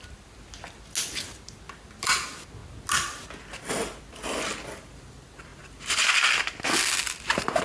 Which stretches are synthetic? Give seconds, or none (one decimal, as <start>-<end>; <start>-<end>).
none

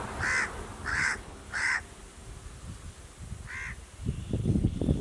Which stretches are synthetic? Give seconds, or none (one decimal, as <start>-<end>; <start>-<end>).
0.9-1.8; 4.4-5.0

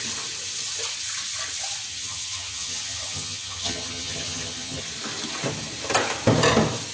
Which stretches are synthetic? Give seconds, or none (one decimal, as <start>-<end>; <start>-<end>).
1.9-4.8

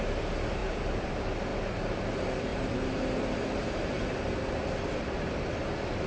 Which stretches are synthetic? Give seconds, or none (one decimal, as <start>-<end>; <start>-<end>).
0.6-1.1; 2.5-5.0

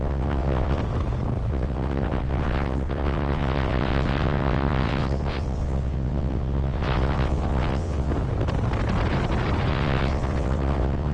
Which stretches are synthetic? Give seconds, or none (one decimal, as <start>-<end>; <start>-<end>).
0.0-0.8; 1.5-8.1; 9.7-11.1

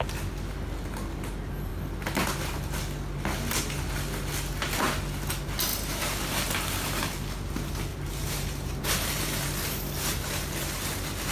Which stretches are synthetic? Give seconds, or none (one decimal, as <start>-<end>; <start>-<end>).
7.9-8.8

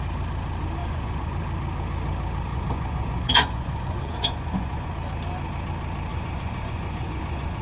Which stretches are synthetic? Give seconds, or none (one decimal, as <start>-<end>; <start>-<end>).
0.8-1.3; 2.5-4.9; 6.1-7.6